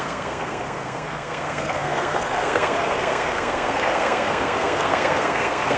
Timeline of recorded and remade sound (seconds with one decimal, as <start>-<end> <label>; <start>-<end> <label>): 0.0-5.8 remade